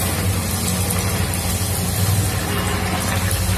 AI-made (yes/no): no